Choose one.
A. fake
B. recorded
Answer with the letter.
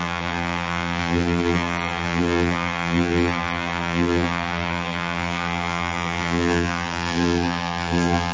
A